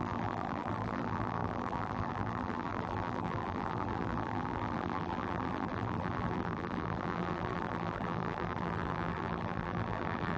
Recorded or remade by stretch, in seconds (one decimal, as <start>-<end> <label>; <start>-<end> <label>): 0.0-10.4 remade